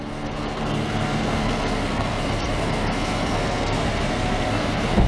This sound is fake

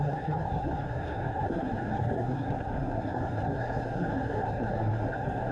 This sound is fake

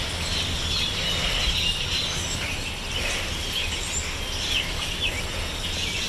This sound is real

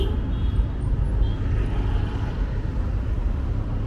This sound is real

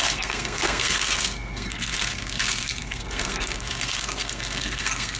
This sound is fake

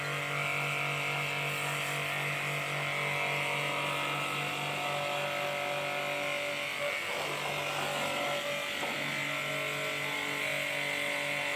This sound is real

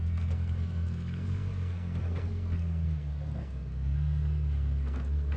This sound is fake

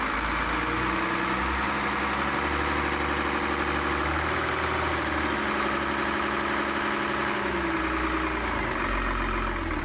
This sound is real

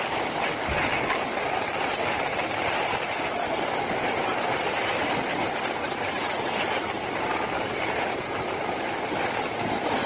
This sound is real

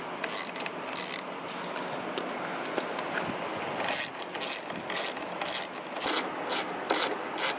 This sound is real